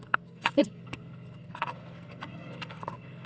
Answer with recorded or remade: remade